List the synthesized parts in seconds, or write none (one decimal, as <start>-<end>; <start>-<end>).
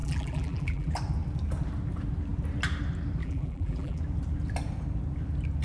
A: 0.0-0.9; 3.2-4.0